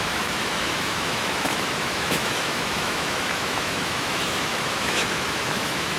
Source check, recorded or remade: remade